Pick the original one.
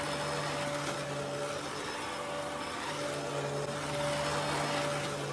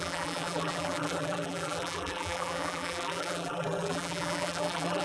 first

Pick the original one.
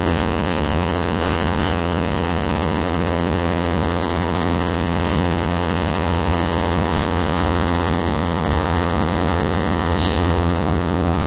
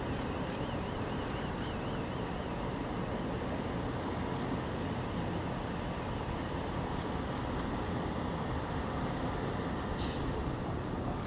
second